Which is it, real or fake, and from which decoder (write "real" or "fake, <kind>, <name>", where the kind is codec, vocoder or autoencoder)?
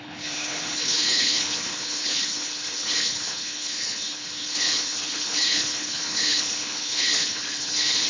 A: fake, codec, HILCodec